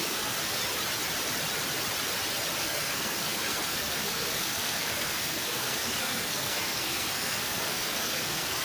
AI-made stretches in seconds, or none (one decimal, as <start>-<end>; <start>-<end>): 0.0-0.6; 2.6-8.6